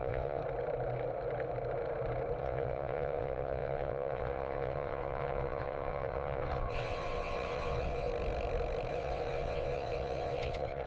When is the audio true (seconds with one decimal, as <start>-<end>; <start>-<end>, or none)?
0.4-2.4; 8.1-8.9